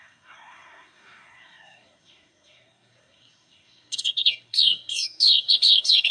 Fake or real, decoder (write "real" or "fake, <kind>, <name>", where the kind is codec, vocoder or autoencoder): fake, codec, SNAC